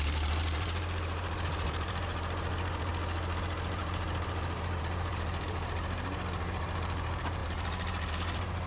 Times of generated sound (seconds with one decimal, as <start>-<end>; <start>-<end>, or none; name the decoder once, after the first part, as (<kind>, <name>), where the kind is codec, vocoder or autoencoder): 0.0-2.9 (vocoder, BigVGAN v2); 3.4-8.7